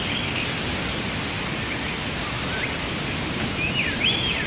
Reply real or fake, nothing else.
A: real